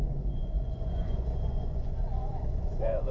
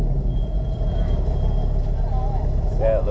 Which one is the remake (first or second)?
first